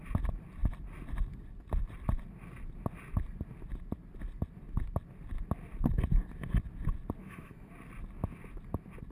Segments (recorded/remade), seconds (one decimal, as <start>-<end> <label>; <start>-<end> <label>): 0.0-7.2 recorded; 7.2-7.7 remade; 7.7-9.1 recorded